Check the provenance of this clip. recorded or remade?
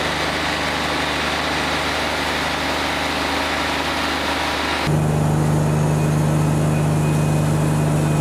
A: recorded